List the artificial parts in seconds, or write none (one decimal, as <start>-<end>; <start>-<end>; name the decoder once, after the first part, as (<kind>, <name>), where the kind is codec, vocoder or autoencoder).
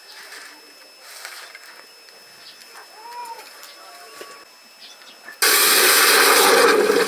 none